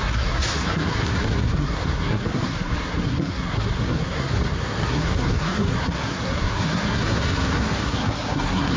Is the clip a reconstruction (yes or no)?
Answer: yes